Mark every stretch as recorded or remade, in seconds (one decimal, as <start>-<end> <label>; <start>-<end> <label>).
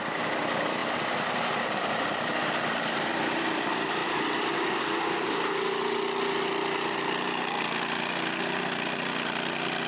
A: 0.0-9.9 recorded